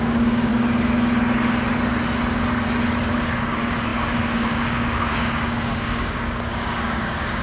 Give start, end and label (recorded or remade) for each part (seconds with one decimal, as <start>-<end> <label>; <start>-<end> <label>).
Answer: 0.0-0.5 remade; 0.5-3.1 recorded; 3.1-7.4 remade